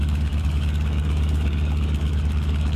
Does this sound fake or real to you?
fake